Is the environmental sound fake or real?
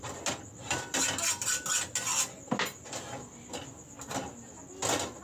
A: real